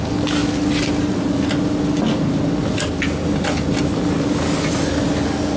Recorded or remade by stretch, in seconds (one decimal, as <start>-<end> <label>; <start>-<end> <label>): 0.0-5.6 recorded